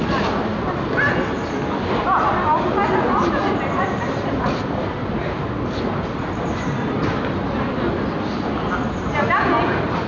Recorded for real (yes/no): yes